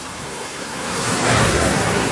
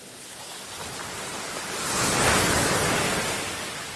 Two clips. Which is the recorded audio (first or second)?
second